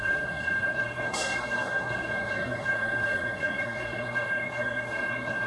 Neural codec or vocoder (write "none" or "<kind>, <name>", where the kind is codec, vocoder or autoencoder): codec, SNAC